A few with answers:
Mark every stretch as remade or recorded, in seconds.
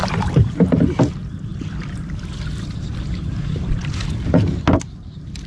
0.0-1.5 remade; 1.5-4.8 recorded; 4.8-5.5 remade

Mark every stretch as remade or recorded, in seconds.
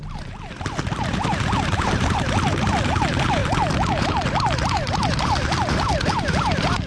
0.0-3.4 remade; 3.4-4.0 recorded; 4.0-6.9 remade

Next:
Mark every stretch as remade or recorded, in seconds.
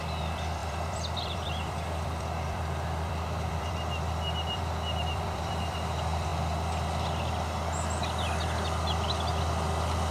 0.0-6.3 remade; 6.3-10.1 recorded